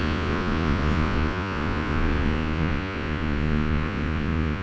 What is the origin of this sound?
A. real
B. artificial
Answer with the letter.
B